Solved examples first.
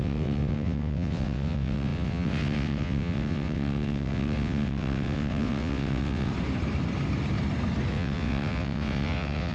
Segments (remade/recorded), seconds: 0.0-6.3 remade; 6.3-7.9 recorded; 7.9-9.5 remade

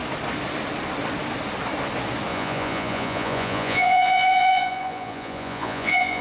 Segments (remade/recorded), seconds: 0.0-2.3 recorded; 2.3-6.2 remade

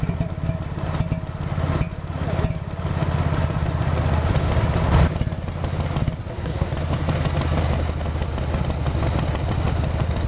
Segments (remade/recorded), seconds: 0.0-6.2 recorded; 6.2-6.7 remade; 6.7-10.3 recorded

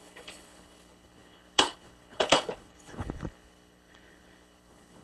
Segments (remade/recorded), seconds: 0.0-5.0 remade

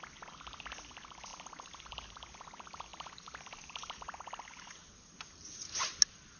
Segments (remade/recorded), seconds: 0.0-2.9 recorded; 2.9-4.9 remade; 4.9-6.4 recorded

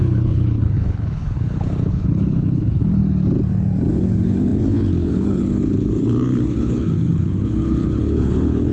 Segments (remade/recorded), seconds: 0.0-3.0 remade; 3.0-3.9 recorded; 3.9-8.7 remade